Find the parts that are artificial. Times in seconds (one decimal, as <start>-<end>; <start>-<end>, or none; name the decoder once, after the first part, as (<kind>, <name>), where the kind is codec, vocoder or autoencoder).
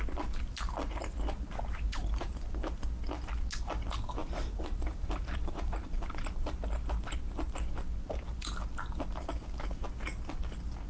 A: 4.2-6.6 (vocoder, BigVGAN v2)